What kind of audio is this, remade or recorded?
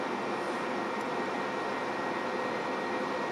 recorded